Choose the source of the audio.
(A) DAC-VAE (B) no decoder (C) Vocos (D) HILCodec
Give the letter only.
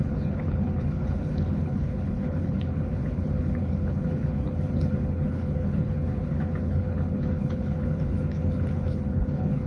D